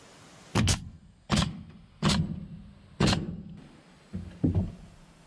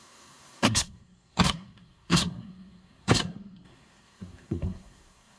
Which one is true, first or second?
first